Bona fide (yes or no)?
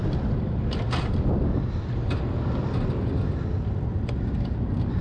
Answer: yes